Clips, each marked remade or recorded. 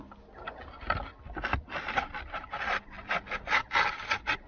recorded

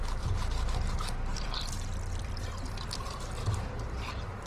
remade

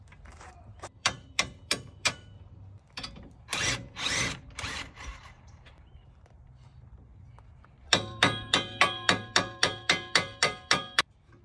remade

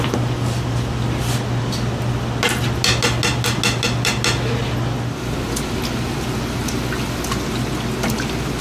recorded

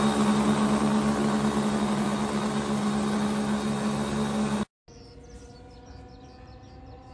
recorded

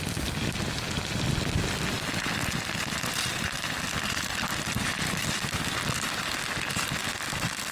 recorded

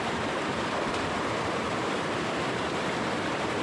remade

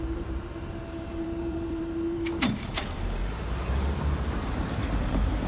remade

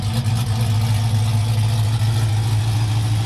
recorded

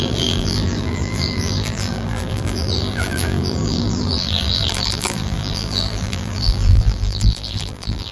remade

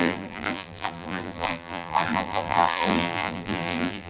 remade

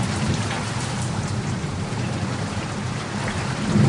remade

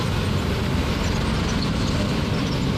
recorded